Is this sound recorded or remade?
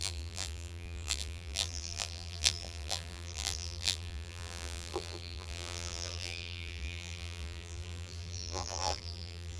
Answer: remade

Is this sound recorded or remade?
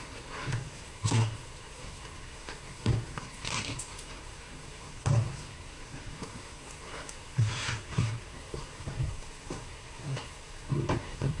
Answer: remade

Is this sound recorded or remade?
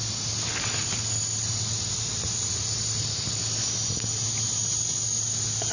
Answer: recorded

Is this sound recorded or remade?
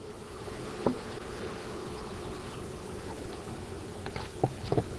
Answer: remade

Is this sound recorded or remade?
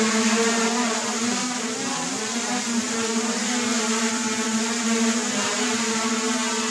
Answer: remade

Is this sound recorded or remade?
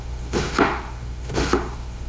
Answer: remade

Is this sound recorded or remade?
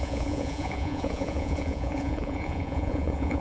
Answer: remade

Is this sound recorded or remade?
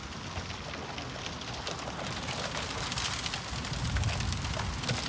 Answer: recorded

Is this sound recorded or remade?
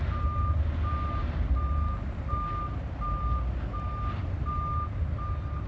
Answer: recorded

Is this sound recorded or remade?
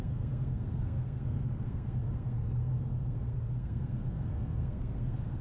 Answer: remade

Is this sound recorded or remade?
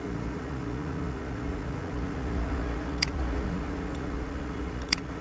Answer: remade